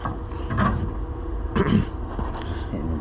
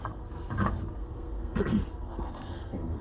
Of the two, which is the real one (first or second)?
first